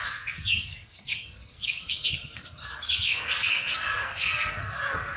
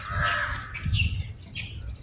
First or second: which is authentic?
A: second